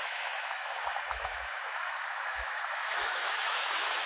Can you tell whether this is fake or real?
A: fake